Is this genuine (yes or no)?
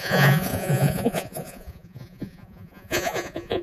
no